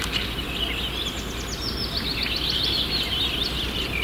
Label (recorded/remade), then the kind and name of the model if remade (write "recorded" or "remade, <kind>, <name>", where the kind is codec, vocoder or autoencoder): recorded